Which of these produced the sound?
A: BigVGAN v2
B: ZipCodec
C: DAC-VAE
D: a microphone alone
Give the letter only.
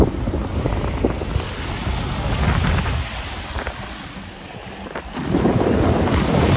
D